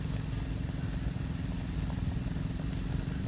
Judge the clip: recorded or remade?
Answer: recorded